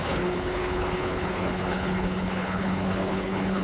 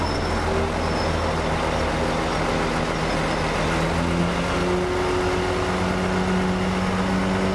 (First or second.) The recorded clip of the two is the second